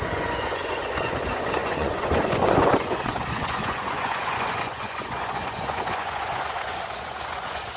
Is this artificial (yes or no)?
yes